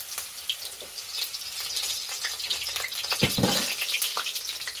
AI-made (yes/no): no